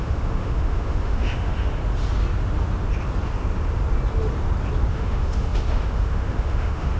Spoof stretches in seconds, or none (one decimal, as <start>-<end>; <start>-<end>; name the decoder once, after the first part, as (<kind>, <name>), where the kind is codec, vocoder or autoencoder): 0.0-1.8 (autoencoder, DAC-VAE); 4.9-7.0